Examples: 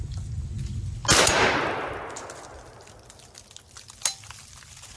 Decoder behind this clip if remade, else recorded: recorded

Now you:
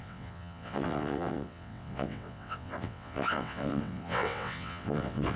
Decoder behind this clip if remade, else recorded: remade, vocoder, WaveNeXt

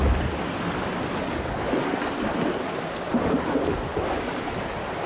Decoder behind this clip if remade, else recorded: recorded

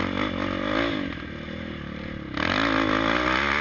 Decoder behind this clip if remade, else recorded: recorded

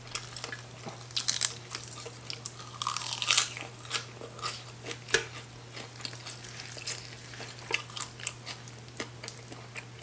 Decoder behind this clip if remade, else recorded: recorded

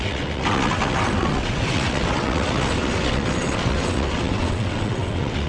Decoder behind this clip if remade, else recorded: remade, vocoder, WaveNeXt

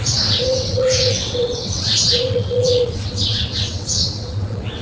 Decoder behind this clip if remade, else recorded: remade, vocoder, WaveNeXt